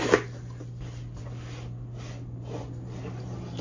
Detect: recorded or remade recorded